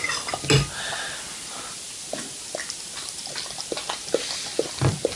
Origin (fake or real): real